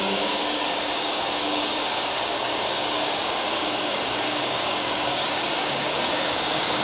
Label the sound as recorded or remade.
remade